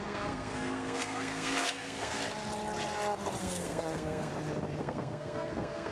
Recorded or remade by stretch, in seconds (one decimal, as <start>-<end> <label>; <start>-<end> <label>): 0.0-2.2 remade; 2.2-3.4 recorded; 3.4-4.3 remade; 4.3-4.8 recorded; 4.8-5.9 remade